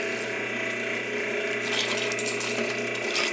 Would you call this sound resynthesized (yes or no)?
no